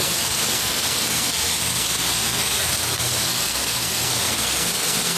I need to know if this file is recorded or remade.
remade